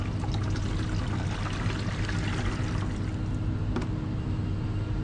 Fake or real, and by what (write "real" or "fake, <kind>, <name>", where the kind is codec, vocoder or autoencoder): real